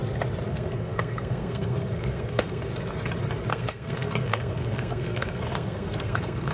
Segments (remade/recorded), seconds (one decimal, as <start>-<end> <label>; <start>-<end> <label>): 0.0-0.5 recorded; 0.5-2.7 remade; 2.7-3.5 recorded; 3.5-6.5 remade